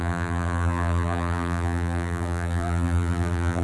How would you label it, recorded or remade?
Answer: remade